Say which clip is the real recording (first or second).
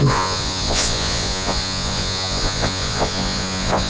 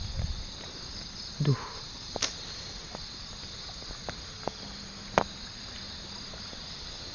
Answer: second